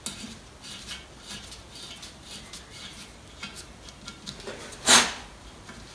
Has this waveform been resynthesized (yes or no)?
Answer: no